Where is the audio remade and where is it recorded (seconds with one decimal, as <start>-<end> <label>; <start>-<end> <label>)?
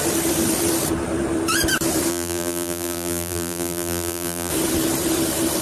0.0-2.1 recorded; 2.1-4.5 remade; 4.5-5.6 recorded